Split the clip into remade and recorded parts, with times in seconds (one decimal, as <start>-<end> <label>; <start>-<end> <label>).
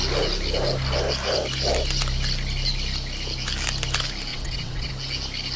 0.0-4.3 recorded; 4.3-4.9 remade; 4.9-5.6 recorded